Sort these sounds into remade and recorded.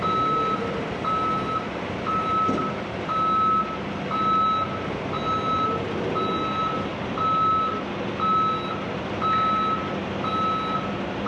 recorded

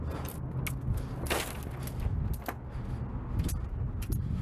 recorded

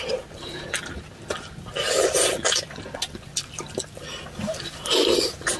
recorded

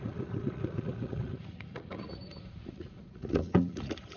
remade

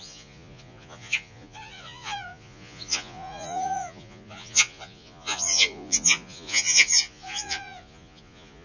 remade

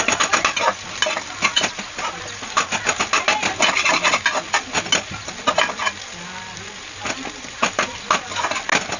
recorded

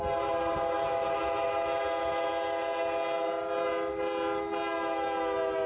recorded